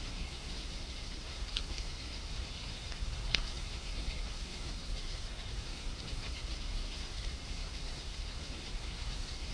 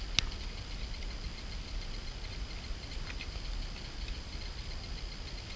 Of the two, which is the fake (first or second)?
first